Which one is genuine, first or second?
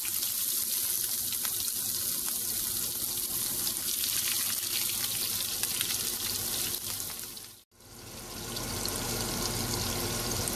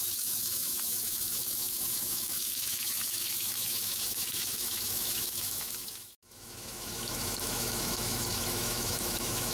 first